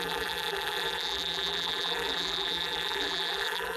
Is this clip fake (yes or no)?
yes